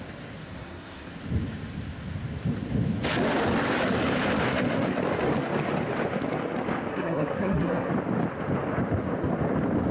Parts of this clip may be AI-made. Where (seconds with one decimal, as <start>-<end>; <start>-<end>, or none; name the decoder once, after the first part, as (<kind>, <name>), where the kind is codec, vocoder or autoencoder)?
0.4-1.1 (codec, SNAC); 6.9-7.9